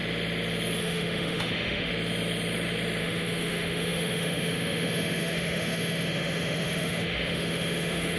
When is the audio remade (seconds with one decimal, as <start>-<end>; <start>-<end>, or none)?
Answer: 0.8-1.9; 3.0-8.2